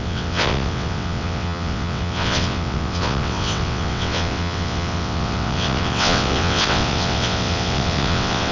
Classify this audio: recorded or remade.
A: remade